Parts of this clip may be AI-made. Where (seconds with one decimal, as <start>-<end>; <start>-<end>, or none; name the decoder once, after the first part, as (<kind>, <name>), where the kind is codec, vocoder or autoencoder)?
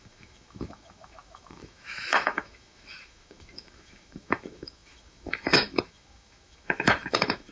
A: 0.0-7.5 (autoencoder, DAC-VAE)